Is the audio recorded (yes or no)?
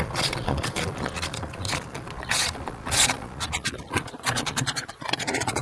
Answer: no